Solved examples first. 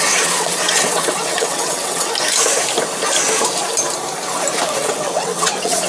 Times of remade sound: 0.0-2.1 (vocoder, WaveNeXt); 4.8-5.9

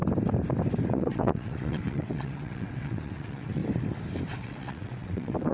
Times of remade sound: 0.9-3.6 (vocoder, WaveNeXt); 4.3-5.5

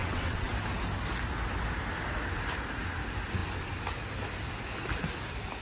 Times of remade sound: 0.0-0.5 (vocoder, WaveNeXt)

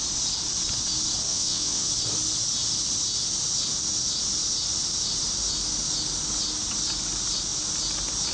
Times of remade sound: 1.3-1.9 (vocoder, WaveNeXt)

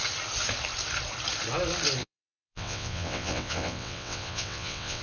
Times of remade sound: 2.0-5.0 (vocoder, WaveNeXt)

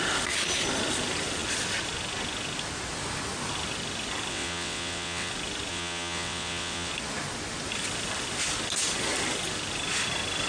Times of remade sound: 4.3-5.3 (vocoder, WaveNeXt); 5.7-6.9